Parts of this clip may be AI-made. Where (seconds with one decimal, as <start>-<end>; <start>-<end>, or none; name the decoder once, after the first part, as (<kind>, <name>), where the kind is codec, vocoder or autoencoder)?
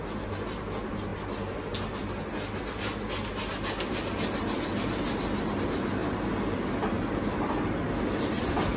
none